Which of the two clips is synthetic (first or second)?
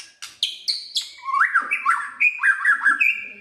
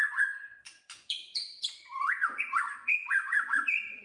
second